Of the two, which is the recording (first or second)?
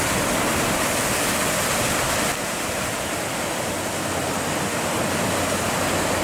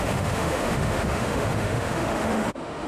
first